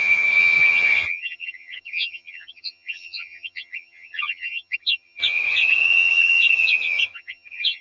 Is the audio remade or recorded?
remade